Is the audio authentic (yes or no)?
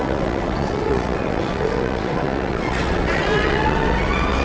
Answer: no